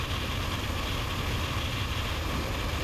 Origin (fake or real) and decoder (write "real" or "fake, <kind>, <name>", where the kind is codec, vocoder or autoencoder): real